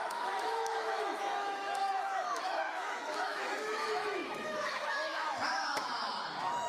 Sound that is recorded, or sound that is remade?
remade